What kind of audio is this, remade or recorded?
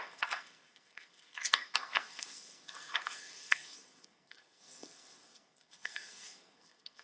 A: remade